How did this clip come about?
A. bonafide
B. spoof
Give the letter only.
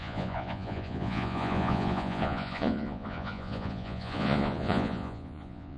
B